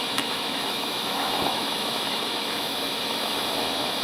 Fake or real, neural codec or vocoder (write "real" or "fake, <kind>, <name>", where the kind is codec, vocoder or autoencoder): fake, autoencoder, DAC-VAE